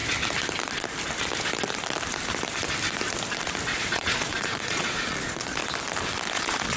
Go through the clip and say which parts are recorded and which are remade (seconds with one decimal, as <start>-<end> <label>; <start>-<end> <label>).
0.0-3.8 recorded; 3.8-5.6 remade; 5.6-6.3 recorded; 6.3-6.8 remade